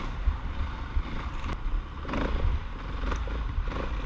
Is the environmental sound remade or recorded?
recorded